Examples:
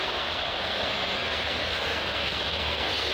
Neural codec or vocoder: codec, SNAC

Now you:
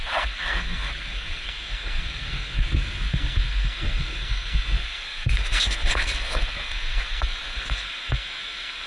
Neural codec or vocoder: codec, SNAC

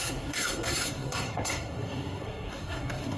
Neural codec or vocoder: codec, SNAC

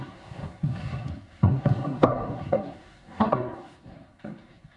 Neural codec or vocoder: codec, SNAC